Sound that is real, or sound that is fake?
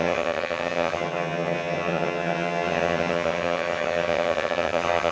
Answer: fake